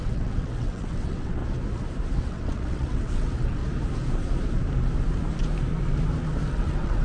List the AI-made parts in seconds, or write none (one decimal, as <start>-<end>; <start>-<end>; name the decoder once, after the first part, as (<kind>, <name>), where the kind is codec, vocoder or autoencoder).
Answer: 0.0-1.4 (vocoder, WaveNeXt); 2.2-3.6; 6.5-7.0